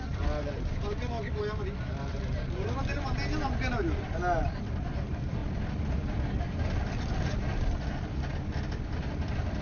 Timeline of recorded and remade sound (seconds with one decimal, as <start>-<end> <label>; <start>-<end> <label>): 0.0-9.6 recorded